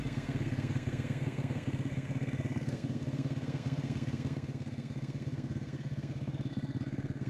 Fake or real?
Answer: fake